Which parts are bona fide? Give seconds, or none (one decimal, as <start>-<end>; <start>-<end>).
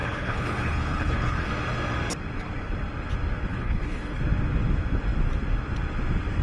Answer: 1.5-3.5; 4.2-6.4